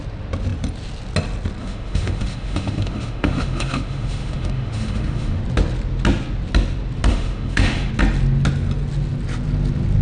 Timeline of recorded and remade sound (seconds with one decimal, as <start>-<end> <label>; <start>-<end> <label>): 0.0-1.6 recorded; 1.6-5.4 remade; 5.4-7.1 recorded; 7.1-7.9 remade; 7.9-10.0 recorded